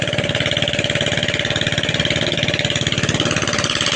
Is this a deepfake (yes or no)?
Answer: no